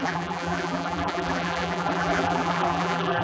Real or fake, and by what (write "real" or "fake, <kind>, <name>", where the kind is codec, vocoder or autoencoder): fake, vocoder, BigVGAN v2